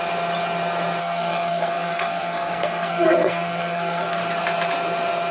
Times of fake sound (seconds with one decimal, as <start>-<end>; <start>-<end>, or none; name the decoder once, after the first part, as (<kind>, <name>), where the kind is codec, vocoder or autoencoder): 1.0-4.2 (codec, SNAC)